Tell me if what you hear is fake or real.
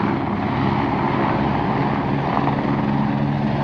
real